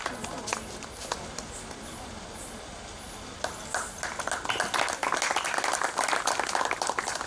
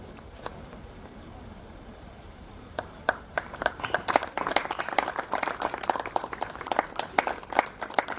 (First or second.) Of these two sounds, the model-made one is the second